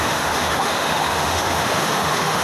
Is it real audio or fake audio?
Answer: fake